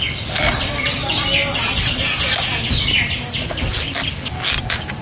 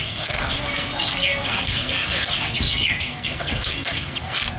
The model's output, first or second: second